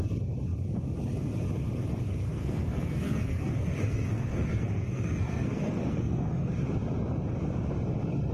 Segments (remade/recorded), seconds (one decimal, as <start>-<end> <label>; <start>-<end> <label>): 0.0-2.1 recorded; 2.1-6.5 remade; 6.5-8.3 recorded